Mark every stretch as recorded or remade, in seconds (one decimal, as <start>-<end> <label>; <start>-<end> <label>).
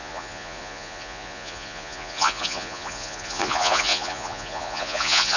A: 0.0-5.4 remade